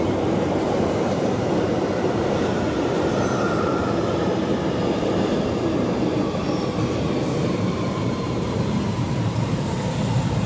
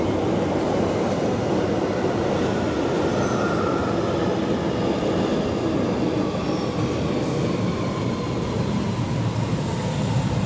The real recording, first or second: second